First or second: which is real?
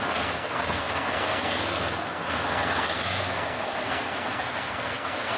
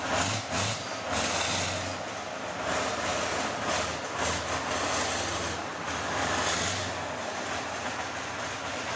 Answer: second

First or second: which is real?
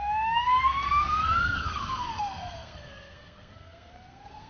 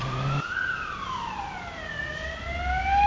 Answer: second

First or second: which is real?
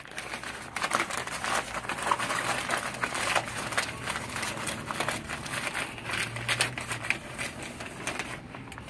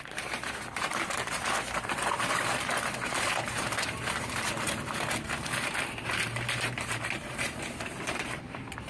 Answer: first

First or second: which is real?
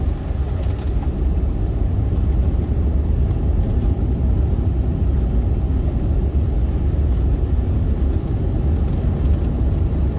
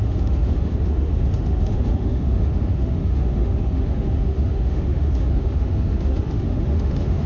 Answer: first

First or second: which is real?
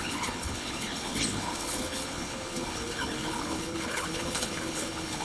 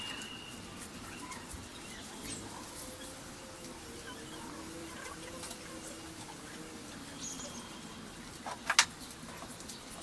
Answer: second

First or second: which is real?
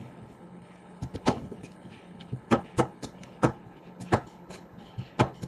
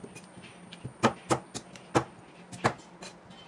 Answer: second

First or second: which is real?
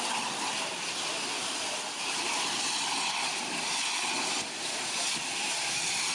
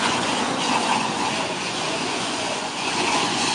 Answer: first